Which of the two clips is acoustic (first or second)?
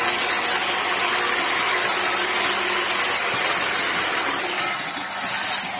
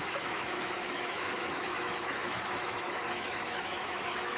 first